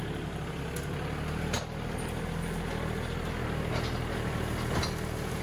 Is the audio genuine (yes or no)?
yes